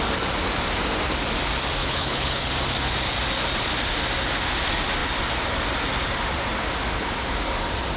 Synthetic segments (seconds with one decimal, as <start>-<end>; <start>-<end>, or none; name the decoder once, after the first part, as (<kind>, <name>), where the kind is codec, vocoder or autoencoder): 1.8-2.5 (codec, HILCodec)